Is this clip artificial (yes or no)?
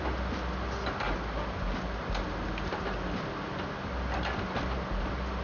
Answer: no